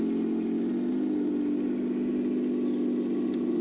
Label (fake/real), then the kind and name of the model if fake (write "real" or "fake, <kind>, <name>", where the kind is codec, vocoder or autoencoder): real